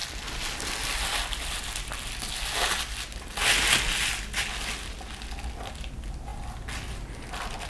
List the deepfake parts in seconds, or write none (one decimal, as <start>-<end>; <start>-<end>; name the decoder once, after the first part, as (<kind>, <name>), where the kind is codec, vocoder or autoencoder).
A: none